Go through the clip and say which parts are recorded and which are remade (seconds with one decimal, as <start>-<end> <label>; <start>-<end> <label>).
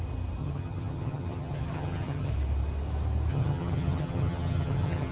0.0-0.4 recorded; 0.4-2.3 remade; 2.3-3.3 recorded; 3.3-5.1 remade